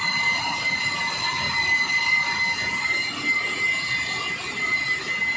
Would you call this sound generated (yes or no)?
no